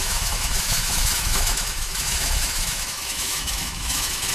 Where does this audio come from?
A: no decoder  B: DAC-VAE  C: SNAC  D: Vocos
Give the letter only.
B